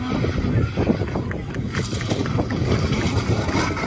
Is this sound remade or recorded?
recorded